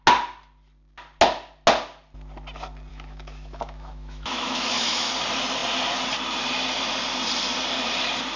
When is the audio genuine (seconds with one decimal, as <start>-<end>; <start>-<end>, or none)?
0.0-2.9; 5.1-8.4